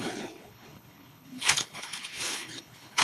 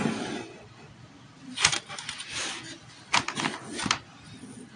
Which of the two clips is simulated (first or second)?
first